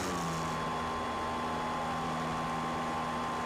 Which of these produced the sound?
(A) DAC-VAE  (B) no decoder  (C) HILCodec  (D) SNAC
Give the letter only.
B